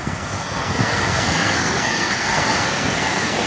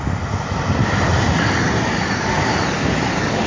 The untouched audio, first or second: second